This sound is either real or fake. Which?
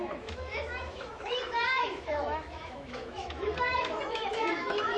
fake